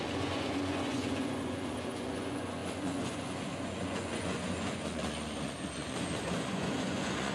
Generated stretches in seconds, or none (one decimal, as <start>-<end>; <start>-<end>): 0.0-7.3

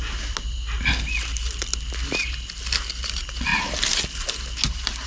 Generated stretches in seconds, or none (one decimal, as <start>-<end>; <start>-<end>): none

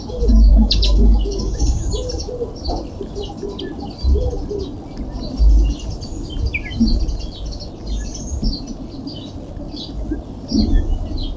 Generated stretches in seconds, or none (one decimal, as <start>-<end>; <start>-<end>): 0.5-1.8

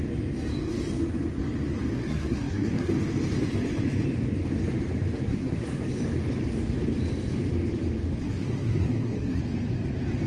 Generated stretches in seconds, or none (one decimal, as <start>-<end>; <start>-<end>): 1.9-2.9; 5.3-5.8; 8.2-9.4